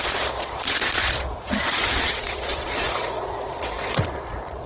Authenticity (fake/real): fake